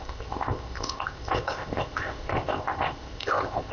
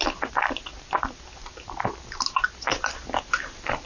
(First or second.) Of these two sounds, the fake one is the first